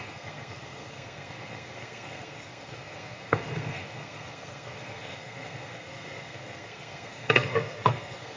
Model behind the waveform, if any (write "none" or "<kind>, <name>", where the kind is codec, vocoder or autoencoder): codec, SNAC